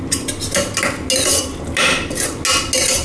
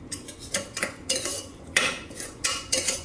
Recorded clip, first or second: first